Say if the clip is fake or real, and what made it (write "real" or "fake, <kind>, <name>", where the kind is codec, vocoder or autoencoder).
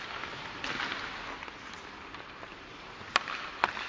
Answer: real